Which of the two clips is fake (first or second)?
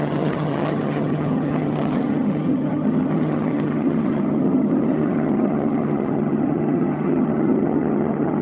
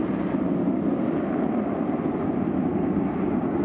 first